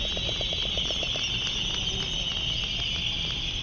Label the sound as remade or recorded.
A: recorded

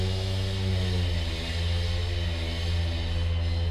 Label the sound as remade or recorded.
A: recorded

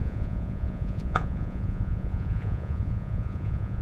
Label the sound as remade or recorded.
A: remade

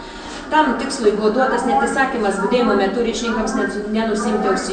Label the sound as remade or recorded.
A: recorded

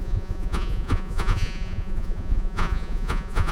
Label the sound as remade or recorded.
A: remade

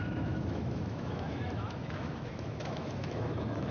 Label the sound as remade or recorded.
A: remade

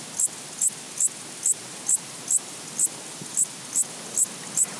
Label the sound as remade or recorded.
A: recorded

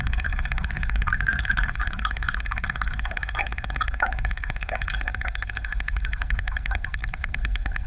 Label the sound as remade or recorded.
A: remade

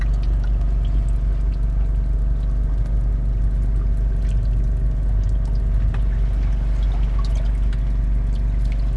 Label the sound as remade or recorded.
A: recorded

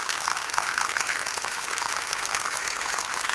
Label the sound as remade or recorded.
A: remade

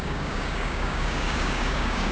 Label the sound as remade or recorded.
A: remade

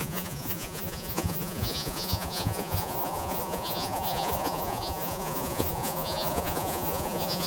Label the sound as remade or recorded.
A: remade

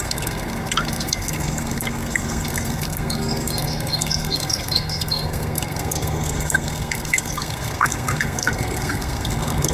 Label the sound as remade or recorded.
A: remade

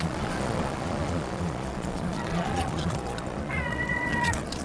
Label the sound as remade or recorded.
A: remade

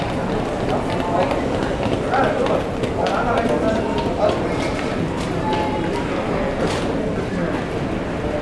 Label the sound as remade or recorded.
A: recorded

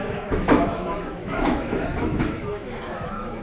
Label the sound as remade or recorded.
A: remade